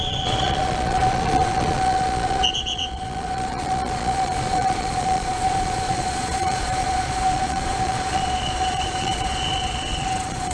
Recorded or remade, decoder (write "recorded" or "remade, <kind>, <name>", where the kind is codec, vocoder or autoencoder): remade, vocoder, Vocos